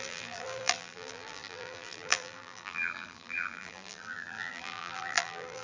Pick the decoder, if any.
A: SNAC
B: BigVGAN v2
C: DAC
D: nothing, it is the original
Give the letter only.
B